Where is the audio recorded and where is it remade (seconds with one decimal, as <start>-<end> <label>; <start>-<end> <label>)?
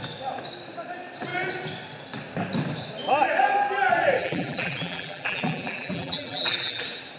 0.0-4.2 recorded; 4.2-6.8 remade; 6.8-7.2 recorded